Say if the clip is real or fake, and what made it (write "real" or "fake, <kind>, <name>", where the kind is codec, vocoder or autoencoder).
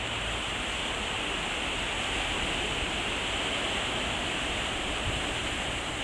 real